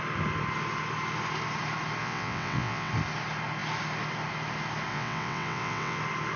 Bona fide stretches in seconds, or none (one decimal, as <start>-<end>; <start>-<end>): 0.0-2.0; 2.9-4.9; 6.0-6.4